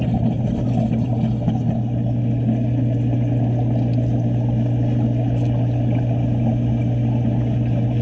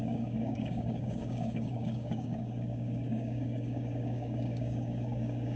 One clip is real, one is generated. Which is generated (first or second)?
second